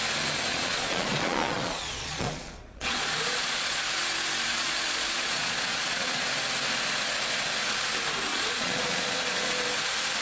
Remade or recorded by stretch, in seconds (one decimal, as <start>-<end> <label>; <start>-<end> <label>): 0.0-0.5 recorded; 0.5-3.8 remade; 3.8-4.5 recorded; 4.5-6.3 remade; 6.3-8.3 recorded; 8.3-9.6 remade; 9.6-10.2 recorded